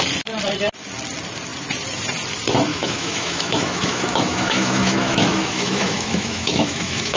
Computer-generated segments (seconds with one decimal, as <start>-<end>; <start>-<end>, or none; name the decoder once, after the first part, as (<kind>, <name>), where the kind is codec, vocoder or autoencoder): 2.7-7.2 (autoencoder, DAC-VAE)